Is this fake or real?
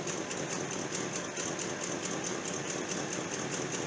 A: real